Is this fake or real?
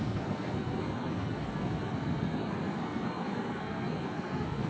fake